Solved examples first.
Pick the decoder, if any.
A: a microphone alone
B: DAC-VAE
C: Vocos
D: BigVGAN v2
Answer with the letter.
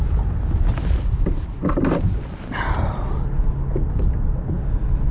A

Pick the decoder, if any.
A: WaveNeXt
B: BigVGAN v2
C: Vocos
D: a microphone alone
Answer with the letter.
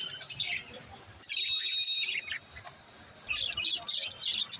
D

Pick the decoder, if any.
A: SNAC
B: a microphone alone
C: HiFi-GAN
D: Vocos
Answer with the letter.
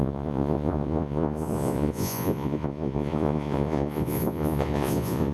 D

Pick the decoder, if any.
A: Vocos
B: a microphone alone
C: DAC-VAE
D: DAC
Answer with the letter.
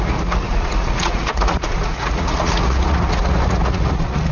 A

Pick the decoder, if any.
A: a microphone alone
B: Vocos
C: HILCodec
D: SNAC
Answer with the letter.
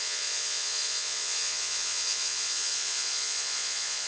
B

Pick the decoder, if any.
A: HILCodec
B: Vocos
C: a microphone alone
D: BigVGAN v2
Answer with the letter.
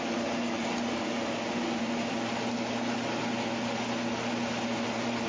C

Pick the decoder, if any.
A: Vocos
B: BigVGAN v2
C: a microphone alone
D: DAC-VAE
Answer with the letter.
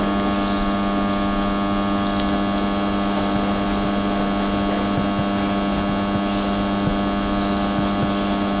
C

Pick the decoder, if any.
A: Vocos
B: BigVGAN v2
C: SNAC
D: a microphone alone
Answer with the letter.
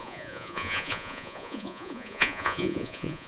A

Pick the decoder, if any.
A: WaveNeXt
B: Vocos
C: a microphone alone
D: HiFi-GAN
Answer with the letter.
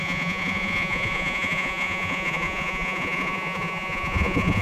B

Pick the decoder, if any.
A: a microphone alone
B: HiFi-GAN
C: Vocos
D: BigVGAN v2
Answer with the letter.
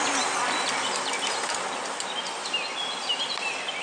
A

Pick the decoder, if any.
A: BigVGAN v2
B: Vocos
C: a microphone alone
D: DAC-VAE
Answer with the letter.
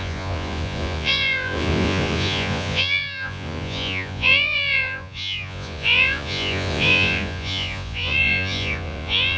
B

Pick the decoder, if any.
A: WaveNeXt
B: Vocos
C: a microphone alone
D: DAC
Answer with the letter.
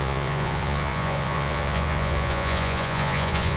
B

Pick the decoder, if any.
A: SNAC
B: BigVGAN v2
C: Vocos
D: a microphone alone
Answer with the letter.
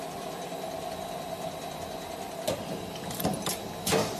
D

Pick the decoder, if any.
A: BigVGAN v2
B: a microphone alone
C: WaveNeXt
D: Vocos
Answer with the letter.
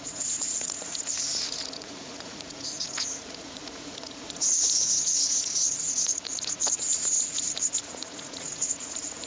D